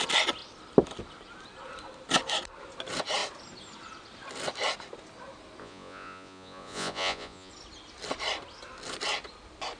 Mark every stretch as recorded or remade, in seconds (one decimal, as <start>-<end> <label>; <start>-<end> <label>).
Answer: 0.0-5.6 recorded; 5.6-7.5 remade; 7.5-9.8 recorded